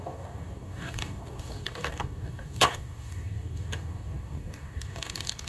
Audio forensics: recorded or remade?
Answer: remade